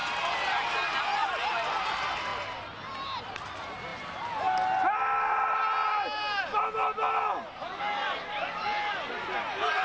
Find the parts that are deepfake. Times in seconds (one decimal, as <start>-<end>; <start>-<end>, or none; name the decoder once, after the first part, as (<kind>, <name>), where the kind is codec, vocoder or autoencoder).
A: none